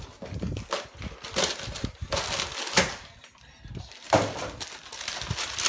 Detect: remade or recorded recorded